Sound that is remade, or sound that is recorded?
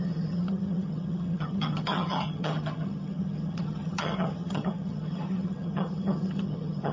remade